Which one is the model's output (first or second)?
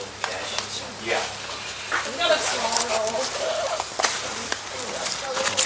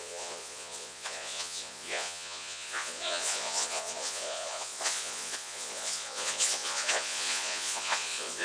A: second